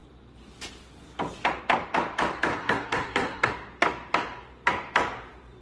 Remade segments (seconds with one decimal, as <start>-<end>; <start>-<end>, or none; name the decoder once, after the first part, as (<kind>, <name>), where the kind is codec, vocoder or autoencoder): 2.5-3.5 (codec, SNAC)